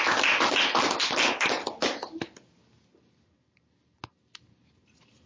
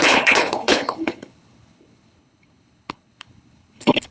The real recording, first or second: first